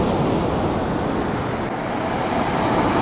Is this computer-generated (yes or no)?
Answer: no